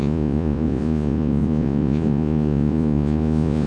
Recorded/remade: remade